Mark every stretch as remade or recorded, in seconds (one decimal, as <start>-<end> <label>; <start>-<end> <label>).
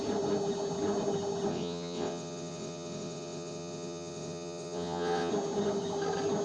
0.0-1.5 recorded; 1.5-5.3 remade; 5.3-6.4 recorded